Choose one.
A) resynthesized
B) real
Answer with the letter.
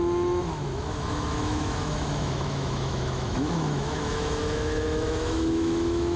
A